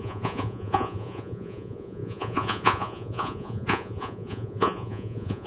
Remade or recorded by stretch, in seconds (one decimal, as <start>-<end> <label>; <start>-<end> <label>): 0.0-5.5 remade